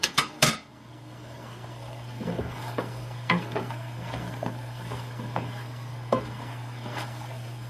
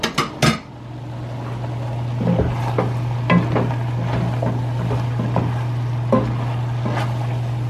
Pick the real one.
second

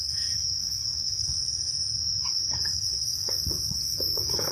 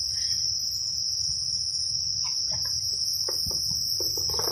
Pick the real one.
second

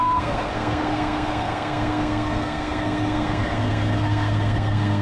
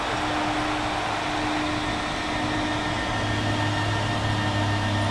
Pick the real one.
second